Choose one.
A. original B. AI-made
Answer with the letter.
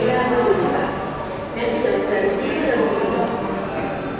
A